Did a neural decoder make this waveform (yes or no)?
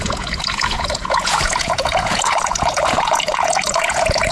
yes